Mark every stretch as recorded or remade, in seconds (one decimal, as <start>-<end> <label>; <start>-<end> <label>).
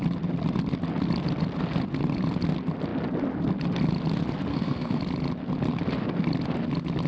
0.0-4.5 recorded; 4.5-5.0 remade; 5.0-7.1 recorded